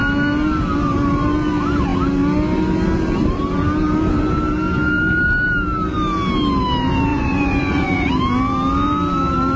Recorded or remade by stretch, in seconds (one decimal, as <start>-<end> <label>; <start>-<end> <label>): 0.0-7.1 recorded; 7.1-8.1 remade; 8.1-9.6 recorded